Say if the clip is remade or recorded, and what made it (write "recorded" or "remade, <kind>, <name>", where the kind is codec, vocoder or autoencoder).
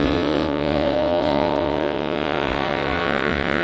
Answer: remade, vocoder, WaveNeXt